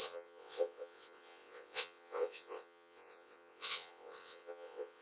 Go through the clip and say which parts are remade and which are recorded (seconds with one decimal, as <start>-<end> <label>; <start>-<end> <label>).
0.0-5.0 remade